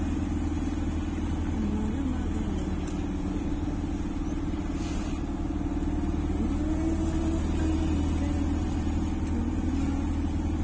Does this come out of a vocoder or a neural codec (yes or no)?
no